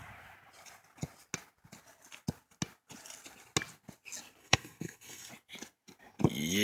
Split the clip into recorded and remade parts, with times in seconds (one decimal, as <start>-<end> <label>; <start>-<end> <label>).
0.0-4.4 recorded; 4.4-5.3 remade; 5.3-6.6 recorded